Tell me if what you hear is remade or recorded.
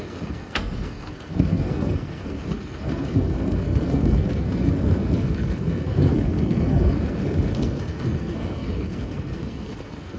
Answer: remade